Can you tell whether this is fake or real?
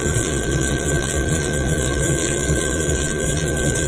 fake